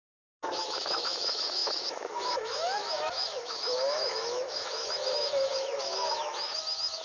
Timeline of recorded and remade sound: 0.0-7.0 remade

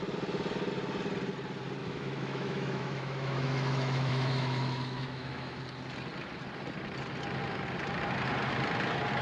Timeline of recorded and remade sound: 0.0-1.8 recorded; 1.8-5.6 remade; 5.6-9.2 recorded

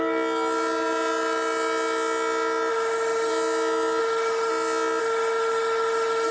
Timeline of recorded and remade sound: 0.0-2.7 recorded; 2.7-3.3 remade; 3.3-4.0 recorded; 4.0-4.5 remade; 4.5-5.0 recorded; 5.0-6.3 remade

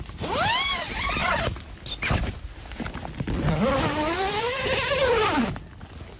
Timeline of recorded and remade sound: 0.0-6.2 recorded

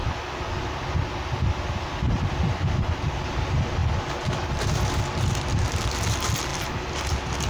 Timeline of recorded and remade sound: 0.0-7.5 recorded

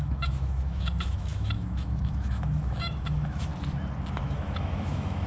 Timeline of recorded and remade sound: 0.0-3.5 remade; 3.5-4.2 recorded; 4.2-5.3 remade